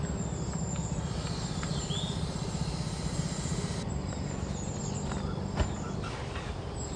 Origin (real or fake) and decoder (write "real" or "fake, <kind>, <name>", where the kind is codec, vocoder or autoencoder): real